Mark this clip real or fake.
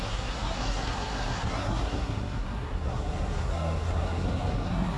fake